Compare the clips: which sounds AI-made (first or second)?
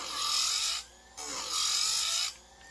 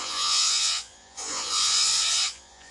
second